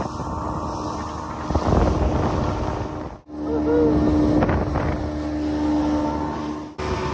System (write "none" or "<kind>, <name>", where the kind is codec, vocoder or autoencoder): none